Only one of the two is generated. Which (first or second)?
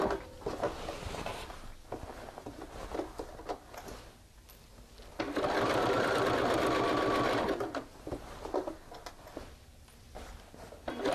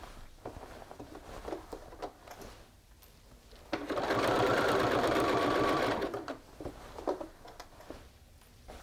second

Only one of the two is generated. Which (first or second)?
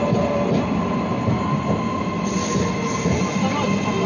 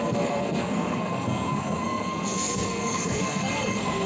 second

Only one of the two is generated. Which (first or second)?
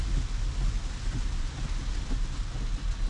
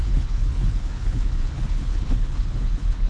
second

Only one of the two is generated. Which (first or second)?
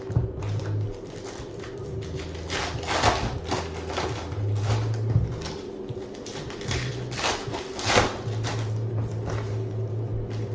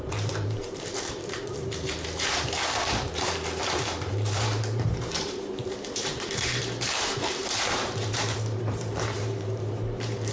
second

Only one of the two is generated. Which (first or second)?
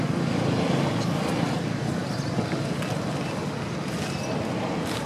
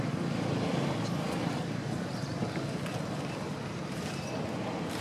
second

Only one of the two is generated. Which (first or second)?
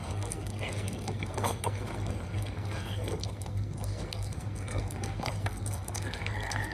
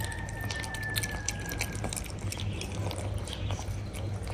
first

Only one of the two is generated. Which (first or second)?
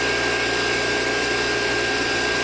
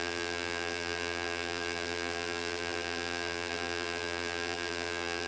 second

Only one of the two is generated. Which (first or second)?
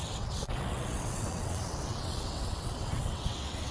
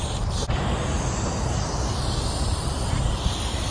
first